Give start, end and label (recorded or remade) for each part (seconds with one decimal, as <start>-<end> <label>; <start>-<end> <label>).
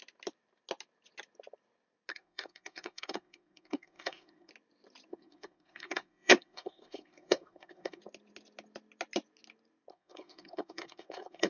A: 0.0-2.1 recorded; 2.1-4.5 remade; 4.5-5.1 recorded; 5.1-8.0 remade; 8.0-9.9 recorded; 9.9-11.5 remade